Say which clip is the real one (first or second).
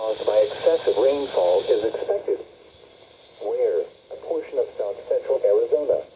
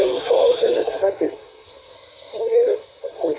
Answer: first